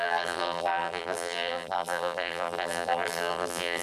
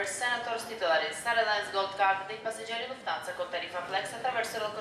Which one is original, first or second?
second